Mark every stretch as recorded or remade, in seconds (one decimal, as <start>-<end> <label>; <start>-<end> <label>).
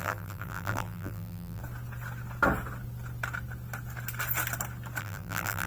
0.0-1.6 remade; 1.6-5.0 recorded; 5.0-5.7 remade